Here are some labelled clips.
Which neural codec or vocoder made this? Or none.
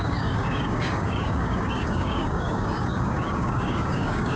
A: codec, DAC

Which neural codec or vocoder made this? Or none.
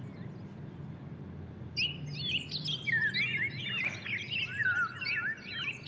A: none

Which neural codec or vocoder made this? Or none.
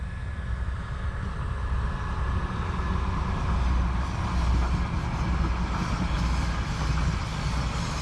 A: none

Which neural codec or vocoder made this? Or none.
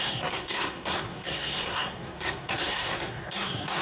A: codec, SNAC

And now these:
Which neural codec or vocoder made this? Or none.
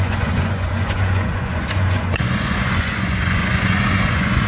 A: vocoder, Vocos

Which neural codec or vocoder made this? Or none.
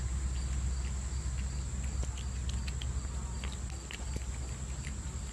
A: none